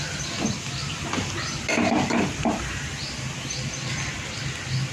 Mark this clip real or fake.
real